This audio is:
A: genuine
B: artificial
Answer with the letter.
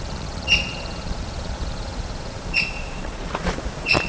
B